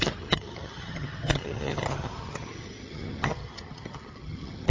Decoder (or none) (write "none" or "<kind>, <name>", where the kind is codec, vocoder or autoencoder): vocoder, HiFi-GAN